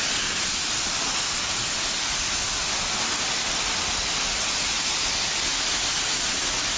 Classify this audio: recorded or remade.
recorded